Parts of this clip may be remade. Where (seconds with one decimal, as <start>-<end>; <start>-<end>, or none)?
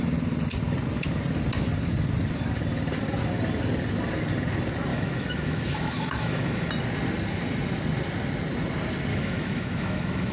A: 4.9-6.7; 9.1-10.3